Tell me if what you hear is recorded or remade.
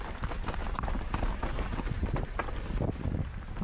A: recorded